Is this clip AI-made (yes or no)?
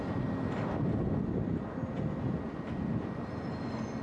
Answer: no